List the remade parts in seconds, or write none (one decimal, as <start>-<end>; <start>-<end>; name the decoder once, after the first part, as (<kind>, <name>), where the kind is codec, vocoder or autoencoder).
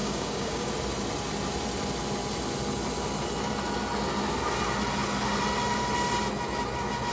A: 0.0-0.7 (codec, DAC)